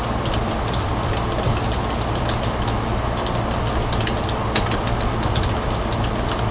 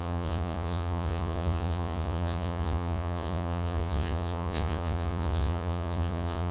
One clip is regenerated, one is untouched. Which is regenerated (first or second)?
second